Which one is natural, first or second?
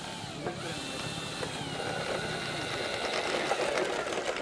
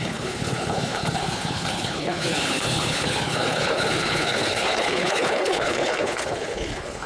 first